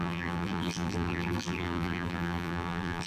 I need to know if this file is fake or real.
fake